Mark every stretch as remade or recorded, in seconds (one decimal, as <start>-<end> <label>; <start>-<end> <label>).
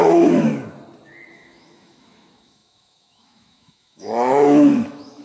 0.0-0.5 remade; 0.5-1.3 recorded; 1.3-5.2 remade